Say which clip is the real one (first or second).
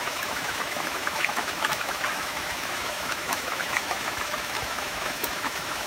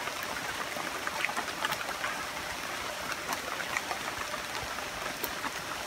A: second